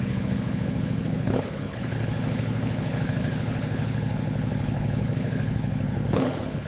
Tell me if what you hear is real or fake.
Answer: fake